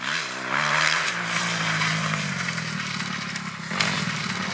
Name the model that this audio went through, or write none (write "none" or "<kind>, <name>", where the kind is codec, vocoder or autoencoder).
none